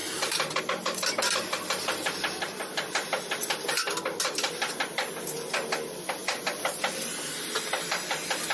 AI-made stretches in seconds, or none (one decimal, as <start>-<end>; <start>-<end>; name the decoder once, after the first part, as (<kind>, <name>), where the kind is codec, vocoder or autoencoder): none